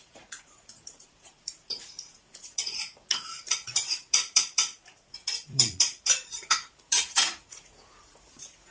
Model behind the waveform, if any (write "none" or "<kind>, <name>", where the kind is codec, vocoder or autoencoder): vocoder, Vocos